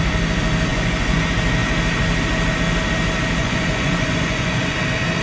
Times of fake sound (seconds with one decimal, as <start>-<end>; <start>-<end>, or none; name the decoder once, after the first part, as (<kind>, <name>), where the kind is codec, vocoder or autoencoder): 0.7-1.2 (vocoder, Vocos); 3.4-4.8